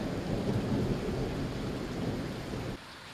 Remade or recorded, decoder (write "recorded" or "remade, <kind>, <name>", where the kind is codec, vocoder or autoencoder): recorded